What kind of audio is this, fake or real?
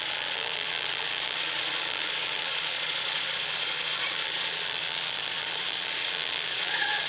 fake